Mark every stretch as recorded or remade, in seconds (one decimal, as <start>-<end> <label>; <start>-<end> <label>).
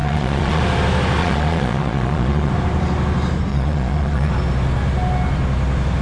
0.0-0.6 remade; 0.6-1.2 recorded; 1.2-2.5 remade; 2.5-3.5 recorded; 3.5-4.3 remade; 4.3-6.0 recorded